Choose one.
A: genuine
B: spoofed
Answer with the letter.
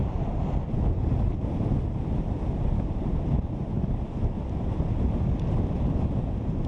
A